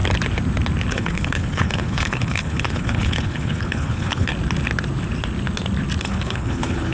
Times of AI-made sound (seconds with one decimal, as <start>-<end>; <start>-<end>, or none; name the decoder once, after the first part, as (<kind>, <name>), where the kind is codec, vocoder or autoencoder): 0.9-4.3 (codec, HILCodec); 6.0-6.9